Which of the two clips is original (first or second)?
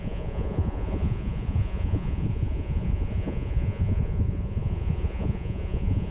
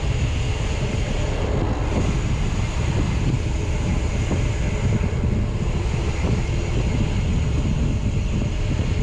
second